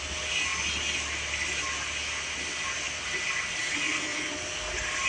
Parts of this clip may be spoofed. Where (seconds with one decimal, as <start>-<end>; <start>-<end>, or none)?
none

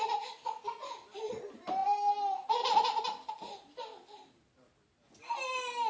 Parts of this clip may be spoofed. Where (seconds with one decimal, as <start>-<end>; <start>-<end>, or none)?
none

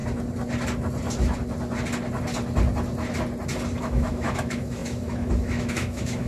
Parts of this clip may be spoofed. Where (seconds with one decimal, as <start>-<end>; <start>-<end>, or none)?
3.8-6.3

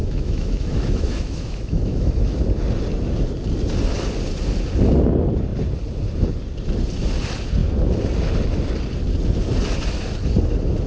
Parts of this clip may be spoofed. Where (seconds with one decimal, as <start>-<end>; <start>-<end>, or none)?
0.0-2.2